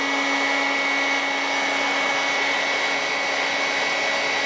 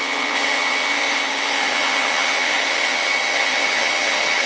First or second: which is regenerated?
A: second